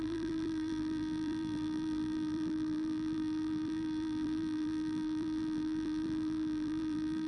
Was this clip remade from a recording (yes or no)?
yes